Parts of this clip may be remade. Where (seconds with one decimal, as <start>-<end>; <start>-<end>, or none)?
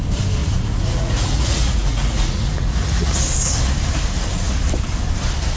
0.4-3.2